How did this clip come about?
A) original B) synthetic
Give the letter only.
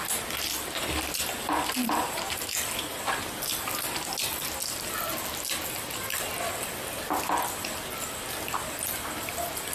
A